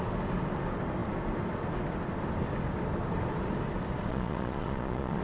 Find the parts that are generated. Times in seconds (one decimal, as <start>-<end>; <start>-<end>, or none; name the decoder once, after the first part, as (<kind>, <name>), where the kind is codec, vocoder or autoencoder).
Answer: 4.1-5.2 (vocoder, Vocos)